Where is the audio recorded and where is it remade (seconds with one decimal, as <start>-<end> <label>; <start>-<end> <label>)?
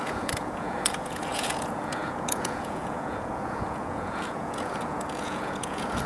0.0-6.1 remade